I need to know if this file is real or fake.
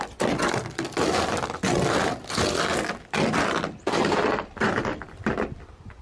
real